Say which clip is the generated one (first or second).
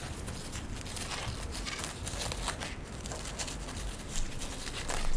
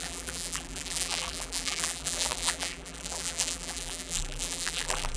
second